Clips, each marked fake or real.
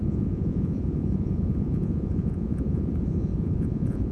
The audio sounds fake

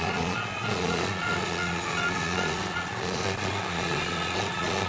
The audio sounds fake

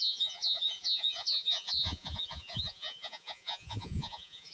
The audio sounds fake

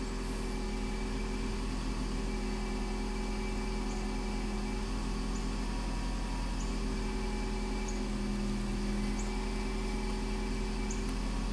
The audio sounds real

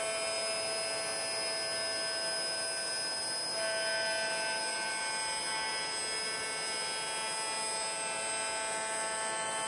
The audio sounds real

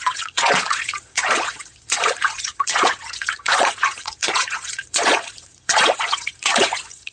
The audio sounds fake